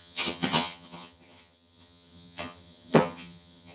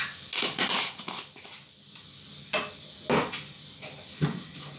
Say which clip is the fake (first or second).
first